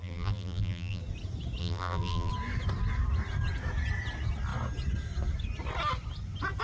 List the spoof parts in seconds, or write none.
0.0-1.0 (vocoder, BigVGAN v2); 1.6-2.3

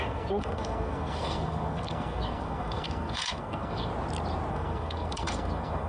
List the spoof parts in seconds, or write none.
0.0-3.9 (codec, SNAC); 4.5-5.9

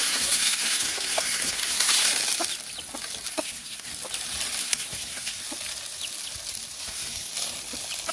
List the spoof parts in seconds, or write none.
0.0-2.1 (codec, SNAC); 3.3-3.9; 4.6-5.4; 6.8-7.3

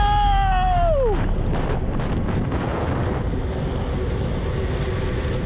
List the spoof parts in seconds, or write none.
none

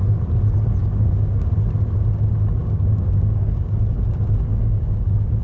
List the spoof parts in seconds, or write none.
0.8-1.5 (codec, DAC); 2.6-3.7; 4.5-5.4

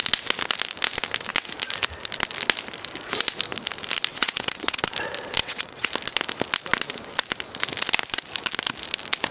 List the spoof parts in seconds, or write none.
4.1-4.9 (vocoder, WaveNeXt); 5.4-5.9